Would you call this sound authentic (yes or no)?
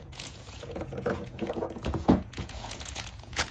no